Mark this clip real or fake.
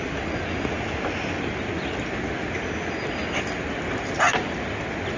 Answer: real